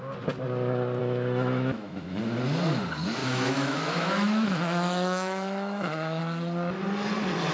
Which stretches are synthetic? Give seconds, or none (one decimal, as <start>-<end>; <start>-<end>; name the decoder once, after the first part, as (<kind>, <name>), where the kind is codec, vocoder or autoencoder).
1.0-2.2 (autoencoder, DAC-VAE); 3.2-6.2